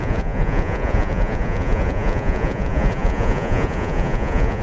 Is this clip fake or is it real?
fake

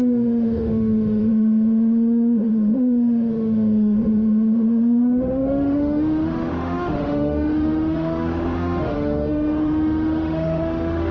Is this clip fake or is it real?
fake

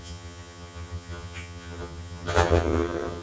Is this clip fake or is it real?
fake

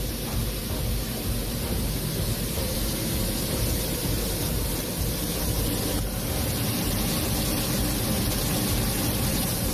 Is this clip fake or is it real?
fake